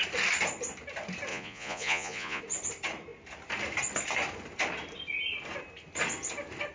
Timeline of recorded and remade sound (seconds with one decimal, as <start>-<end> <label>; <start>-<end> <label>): 0.0-1.3 recorded; 1.3-2.4 remade; 2.4-6.7 recorded